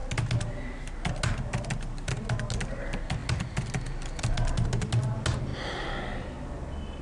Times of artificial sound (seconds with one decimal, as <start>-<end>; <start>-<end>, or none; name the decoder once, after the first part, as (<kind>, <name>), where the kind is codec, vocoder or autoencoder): none